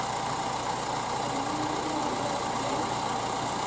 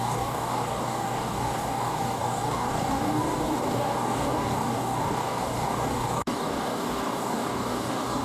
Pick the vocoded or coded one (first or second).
second